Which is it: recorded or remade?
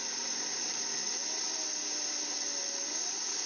recorded